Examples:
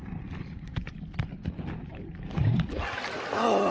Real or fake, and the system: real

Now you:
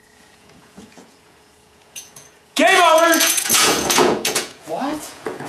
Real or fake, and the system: fake, vocoder, Vocos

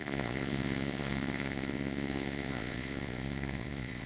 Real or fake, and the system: fake, vocoder, Vocos